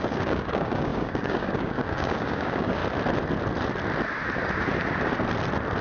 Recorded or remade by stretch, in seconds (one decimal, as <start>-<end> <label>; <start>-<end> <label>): 0.0-2.8 remade; 2.8-5.8 recorded